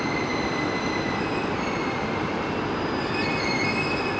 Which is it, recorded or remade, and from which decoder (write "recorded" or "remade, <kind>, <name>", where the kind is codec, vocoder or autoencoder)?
recorded